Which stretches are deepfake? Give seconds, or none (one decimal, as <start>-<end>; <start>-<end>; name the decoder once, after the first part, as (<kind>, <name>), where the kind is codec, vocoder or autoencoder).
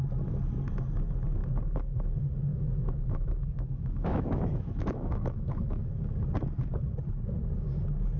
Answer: 2.5-5.9 (autoencoder, DAC-VAE)